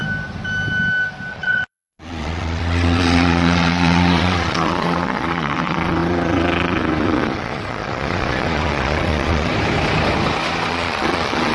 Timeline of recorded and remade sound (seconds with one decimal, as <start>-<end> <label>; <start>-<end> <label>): 0.0-1.3 recorded; 1.3-9.5 remade; 9.5-10.7 recorded; 10.7-11.5 remade